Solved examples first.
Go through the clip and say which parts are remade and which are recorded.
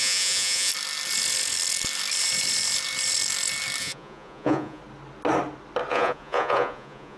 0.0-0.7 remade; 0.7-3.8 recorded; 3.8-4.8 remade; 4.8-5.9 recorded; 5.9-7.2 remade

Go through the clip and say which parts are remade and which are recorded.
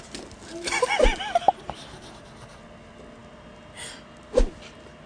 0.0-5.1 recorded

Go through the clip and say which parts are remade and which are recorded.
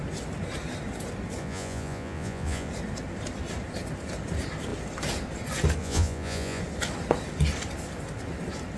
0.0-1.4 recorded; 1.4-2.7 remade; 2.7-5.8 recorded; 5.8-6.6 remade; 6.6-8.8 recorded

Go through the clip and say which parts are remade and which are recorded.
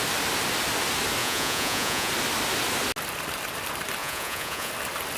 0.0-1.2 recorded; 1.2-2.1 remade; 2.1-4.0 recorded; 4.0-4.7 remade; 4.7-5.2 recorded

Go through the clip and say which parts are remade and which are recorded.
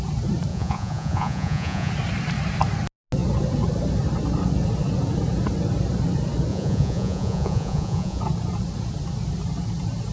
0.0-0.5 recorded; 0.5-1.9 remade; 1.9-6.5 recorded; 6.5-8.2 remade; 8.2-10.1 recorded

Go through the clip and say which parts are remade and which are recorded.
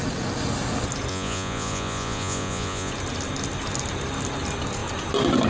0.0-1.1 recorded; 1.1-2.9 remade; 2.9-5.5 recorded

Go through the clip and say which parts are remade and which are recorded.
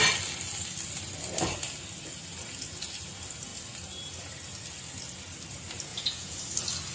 0.0-5.9 recorded; 5.9-6.4 remade; 6.4-6.9 recorded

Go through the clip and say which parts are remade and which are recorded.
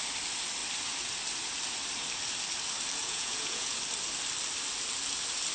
0.0-3.0 recorded; 3.0-3.8 remade; 3.8-5.5 recorded